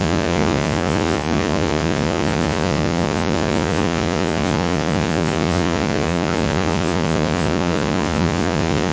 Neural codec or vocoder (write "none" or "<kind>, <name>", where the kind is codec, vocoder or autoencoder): vocoder, Vocos